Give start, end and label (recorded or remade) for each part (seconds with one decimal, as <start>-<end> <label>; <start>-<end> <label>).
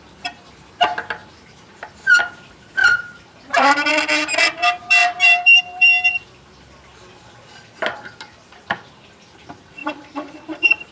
0.0-2.8 recorded; 2.8-3.9 remade; 3.9-5.0 recorded; 5.0-5.6 remade; 5.6-9.8 recorded; 9.8-10.9 remade